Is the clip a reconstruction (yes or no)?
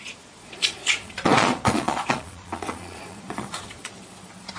yes